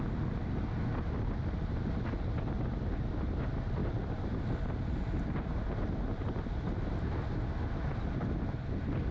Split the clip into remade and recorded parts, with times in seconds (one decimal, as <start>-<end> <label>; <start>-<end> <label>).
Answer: 0.0-9.1 recorded